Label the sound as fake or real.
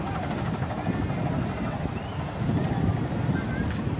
fake